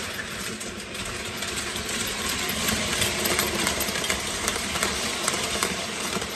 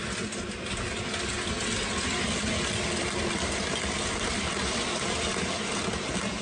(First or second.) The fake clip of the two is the first